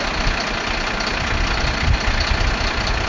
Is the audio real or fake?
real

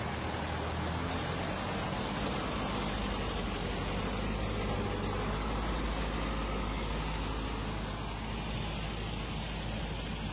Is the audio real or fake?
real